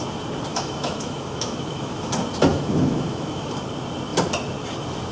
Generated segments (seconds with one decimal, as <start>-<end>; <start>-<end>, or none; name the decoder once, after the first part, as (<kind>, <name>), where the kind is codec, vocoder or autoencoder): 0.5-2.1 (autoencoder, DAC-VAE); 2.5-3.5